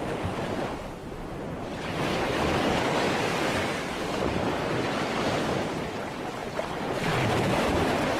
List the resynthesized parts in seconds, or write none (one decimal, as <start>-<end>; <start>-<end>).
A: 2.1-4.4